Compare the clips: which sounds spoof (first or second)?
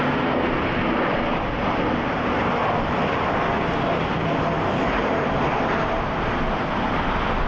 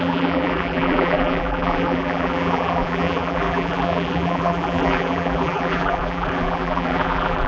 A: second